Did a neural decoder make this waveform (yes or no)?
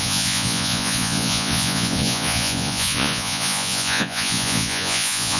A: yes